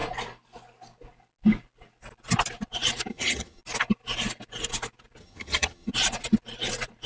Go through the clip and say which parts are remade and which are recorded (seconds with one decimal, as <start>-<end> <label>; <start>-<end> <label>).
0.0-3.1 recorded; 3.1-3.6 remade; 3.6-5.2 recorded; 5.2-5.9 remade; 5.9-7.1 recorded